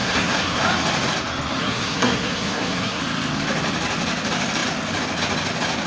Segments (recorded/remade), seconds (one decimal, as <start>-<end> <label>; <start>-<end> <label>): 0.0-0.6 remade; 0.6-1.6 recorded; 1.6-3.0 remade; 3.0-5.9 recorded